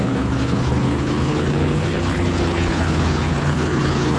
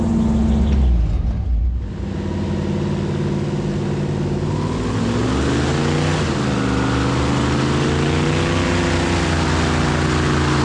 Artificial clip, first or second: first